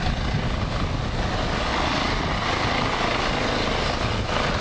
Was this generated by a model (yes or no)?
no